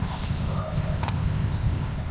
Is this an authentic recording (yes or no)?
no